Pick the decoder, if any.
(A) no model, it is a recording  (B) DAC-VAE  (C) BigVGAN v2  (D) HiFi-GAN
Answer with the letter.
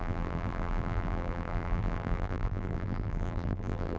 C